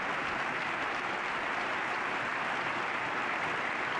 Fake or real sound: real